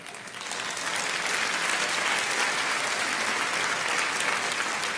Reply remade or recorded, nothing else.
recorded